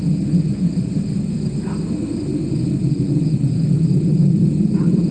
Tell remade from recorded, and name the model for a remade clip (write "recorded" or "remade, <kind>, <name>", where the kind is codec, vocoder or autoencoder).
recorded